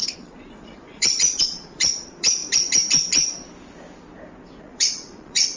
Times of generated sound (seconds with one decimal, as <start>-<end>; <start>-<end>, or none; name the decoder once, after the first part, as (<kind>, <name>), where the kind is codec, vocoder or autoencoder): 0.0-2.4 (vocoder, Vocos); 4.6-5.6